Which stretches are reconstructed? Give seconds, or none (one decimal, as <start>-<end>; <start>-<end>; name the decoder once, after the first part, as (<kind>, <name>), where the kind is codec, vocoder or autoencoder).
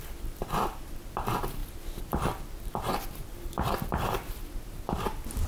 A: none